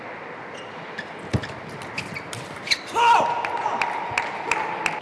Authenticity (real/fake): real